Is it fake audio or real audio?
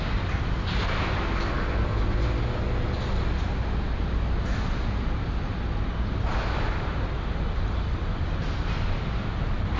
real